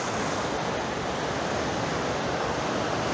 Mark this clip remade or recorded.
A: recorded